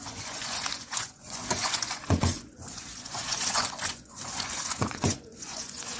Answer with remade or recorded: remade